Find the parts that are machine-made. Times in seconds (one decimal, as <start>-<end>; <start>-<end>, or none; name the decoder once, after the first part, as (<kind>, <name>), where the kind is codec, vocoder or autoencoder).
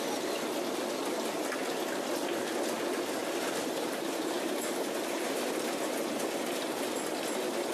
3.2-6.3 (vocoder, BigVGAN v2)